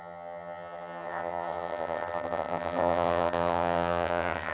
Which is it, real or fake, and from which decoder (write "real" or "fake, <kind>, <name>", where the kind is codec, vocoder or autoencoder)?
fake, vocoder, HiFi-GAN